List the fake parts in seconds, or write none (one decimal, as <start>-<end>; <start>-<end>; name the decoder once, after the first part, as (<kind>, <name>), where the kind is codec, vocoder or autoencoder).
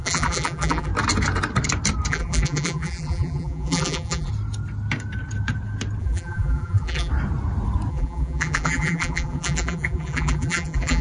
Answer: 0.0-0.9 (vocoder, BigVGAN v2); 2.1-4.3; 6.0-7.1; 7.9-11.0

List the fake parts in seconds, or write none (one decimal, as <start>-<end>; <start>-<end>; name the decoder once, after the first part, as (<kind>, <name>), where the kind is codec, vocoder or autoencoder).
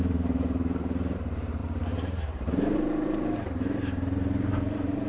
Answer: 0.0-5.1 (vocoder, BigVGAN v2)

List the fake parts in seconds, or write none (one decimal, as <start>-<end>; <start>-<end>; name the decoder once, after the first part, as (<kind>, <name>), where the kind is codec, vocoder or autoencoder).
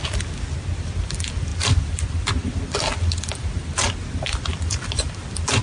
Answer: 1.5-2.3 (vocoder, BigVGAN v2); 4.5-5.6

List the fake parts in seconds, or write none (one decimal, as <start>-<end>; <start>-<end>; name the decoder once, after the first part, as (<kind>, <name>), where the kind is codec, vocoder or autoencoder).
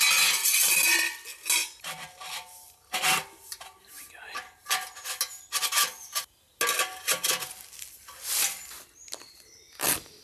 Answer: none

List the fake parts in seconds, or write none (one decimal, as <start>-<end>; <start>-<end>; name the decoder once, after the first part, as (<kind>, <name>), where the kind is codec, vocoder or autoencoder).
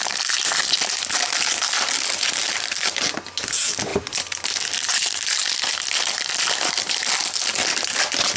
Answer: 2.4-3.0 (vocoder, BigVGAN v2); 3.9-7.1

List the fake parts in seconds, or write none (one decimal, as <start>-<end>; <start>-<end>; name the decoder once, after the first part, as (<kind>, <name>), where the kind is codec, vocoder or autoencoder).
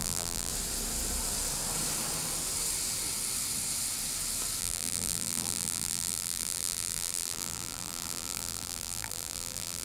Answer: 0.0-0.5 (vocoder, BigVGAN v2); 4.6-9.8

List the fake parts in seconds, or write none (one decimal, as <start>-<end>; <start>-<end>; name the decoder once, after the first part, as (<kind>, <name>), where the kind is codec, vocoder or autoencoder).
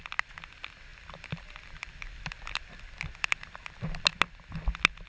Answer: 0.9-4.0 (vocoder, BigVGAN v2)